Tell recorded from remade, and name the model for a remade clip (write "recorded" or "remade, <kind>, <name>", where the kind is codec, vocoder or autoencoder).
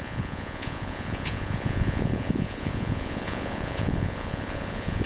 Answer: remade, vocoder, Vocos